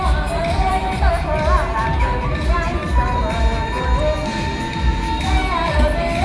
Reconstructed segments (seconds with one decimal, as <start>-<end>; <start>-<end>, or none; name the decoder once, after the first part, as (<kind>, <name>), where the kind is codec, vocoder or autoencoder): 0.4-1.1 (vocoder, BigVGAN v2)

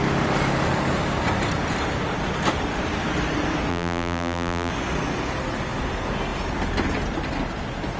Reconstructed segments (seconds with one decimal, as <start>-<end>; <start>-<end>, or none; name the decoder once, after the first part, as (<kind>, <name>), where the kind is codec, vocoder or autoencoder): 3.7-4.7 (vocoder, BigVGAN v2)

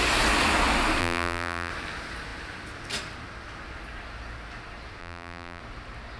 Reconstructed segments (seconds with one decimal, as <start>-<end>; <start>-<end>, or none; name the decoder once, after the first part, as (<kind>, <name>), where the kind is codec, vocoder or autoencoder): 1.0-1.7 (vocoder, BigVGAN v2); 5.0-5.6

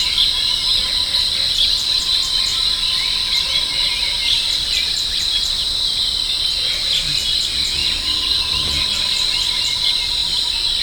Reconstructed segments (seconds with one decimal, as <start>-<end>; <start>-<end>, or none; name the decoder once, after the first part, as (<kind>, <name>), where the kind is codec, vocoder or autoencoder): 0.7-2.0 (vocoder, BigVGAN v2); 2.5-6.4; 7.8-8.5; 10.2-10.8

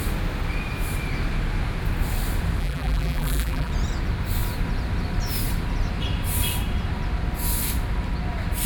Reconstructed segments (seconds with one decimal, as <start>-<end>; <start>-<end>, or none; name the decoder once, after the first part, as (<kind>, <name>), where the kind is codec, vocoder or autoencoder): 2.6-3.7 (vocoder, BigVGAN v2)